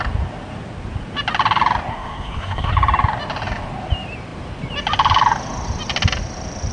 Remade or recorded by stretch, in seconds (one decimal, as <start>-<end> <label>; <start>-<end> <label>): 0.0-1.9 recorded; 1.9-2.7 remade; 2.7-6.7 recorded